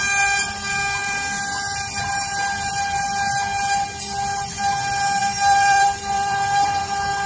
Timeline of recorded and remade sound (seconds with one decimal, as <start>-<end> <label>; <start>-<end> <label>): 0.0-5.2 recorded; 5.2-6.8 remade; 6.8-7.3 recorded